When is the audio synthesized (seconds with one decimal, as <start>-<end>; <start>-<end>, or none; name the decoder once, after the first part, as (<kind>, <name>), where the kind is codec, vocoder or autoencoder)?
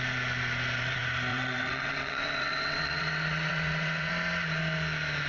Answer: 1.3-4.1 (vocoder, WaveNeXt)